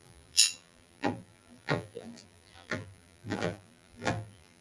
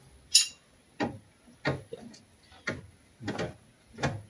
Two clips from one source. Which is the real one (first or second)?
second